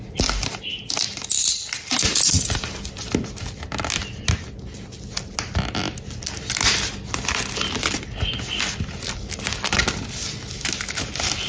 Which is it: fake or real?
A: real